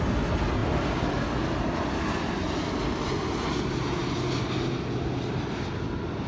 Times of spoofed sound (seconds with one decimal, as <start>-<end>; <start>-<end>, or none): none